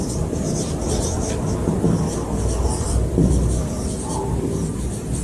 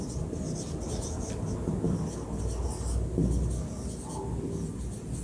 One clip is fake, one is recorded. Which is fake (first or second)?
first